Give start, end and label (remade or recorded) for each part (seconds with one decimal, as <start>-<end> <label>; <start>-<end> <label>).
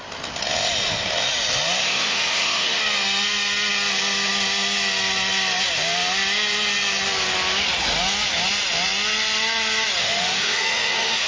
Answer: 0.0-1.8 recorded; 1.8-2.8 remade; 2.8-10.0 recorded; 10.0-11.3 remade